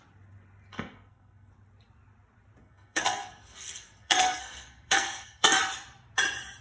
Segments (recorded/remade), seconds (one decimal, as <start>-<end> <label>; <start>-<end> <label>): 0.0-0.7 recorded; 0.7-1.5 remade; 1.5-2.6 recorded; 2.6-5.6 remade; 5.6-6.6 recorded